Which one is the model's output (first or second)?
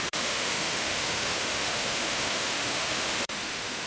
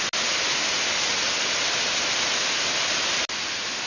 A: first